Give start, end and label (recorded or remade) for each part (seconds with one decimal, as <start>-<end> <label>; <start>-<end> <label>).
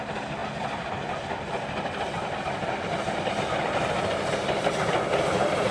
0.0-5.7 recorded